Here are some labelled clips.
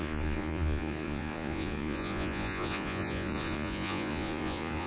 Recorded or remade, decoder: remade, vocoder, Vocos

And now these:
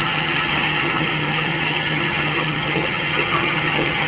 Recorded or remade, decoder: remade, vocoder, HiFi-GAN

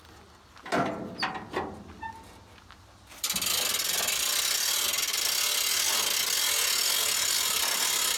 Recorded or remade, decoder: recorded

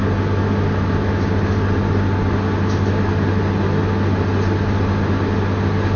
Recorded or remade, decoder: recorded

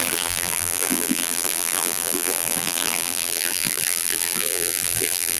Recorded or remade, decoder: remade, vocoder, BigVGAN v2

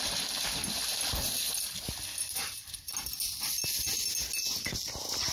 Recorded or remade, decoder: recorded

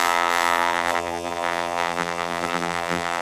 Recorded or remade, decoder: remade, vocoder, BigVGAN v2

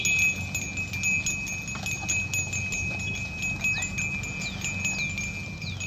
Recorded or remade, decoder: recorded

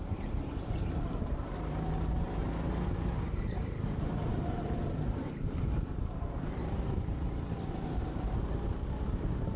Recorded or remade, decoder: remade, vocoder, BigVGAN v2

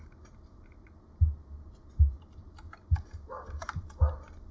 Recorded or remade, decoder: remade, vocoder, BigVGAN v2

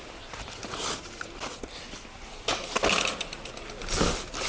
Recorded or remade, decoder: recorded